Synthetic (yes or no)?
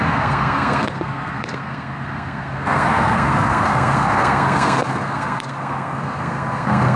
yes